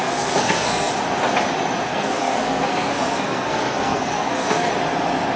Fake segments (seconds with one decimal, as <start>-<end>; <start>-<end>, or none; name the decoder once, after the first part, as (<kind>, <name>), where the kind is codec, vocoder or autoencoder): 0.0-0.9 (codec, SNAC); 1.9-4.7